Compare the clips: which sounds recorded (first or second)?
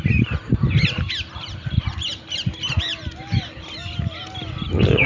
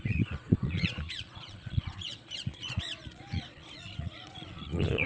first